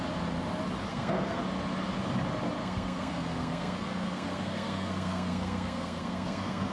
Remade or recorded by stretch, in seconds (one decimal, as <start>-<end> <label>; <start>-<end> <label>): 0.0-0.9 recorded; 0.9-1.4 remade; 1.4-2.6 recorded; 2.6-6.7 remade